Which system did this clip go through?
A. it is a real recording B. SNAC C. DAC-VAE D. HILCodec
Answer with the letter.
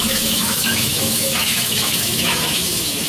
C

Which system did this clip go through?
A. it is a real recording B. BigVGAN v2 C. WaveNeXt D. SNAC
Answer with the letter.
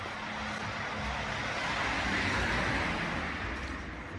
A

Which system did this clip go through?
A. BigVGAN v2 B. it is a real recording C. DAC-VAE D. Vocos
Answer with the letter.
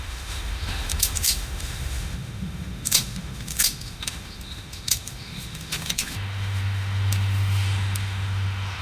C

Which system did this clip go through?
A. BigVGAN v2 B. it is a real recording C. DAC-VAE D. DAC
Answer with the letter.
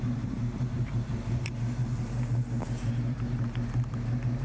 A